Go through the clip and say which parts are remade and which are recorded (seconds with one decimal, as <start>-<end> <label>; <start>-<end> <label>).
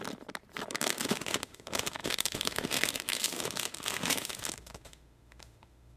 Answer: 0.0-0.7 recorded; 0.7-6.0 remade